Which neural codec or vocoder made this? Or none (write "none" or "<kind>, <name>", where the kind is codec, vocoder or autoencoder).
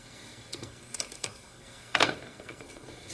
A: codec, SNAC